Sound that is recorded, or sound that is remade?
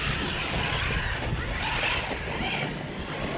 recorded